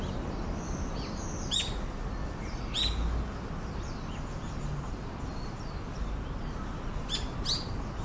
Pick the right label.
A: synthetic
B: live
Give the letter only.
B